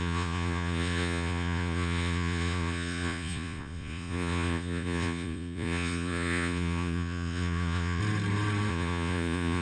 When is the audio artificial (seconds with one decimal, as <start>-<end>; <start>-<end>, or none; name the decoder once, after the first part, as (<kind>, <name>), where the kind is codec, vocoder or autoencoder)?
0.0-8.0 (vocoder, Vocos); 8.7-9.6